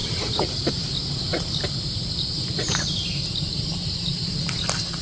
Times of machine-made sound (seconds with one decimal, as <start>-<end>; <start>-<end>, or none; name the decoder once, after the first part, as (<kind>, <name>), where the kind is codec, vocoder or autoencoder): 0.0-0.7 (vocoder, BigVGAN v2); 1.3-4.3